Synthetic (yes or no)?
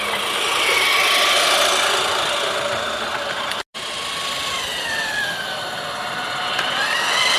no